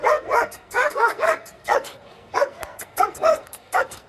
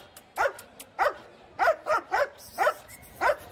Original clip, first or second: second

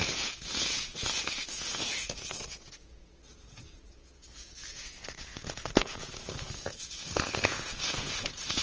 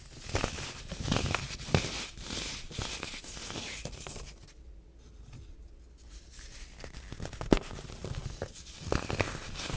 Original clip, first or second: second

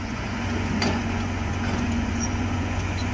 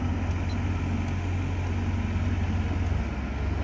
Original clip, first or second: second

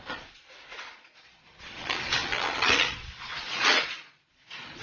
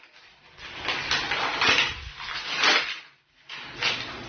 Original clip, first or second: second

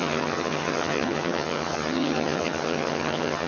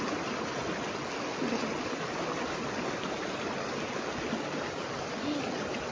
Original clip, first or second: second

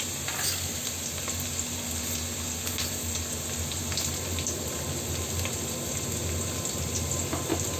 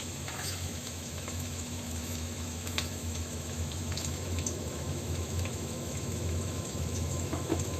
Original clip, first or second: first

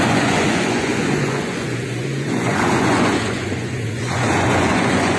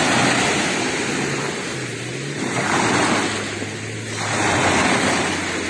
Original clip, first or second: second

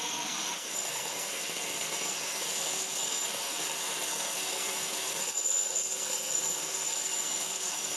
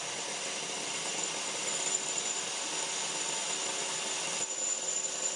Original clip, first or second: second